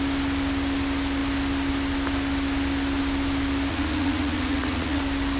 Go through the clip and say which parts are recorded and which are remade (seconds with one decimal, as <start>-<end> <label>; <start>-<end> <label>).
0.0-3.7 recorded; 3.7-5.0 remade; 5.0-5.4 recorded